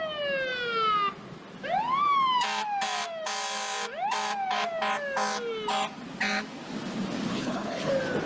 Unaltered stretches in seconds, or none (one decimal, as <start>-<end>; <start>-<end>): 0.0-7.3; 7.9-8.3